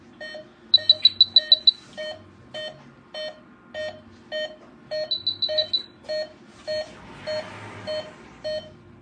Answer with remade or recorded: recorded